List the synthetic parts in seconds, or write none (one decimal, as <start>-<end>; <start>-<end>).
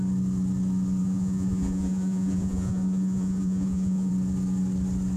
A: 1.0-4.1